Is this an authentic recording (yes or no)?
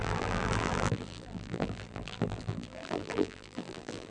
no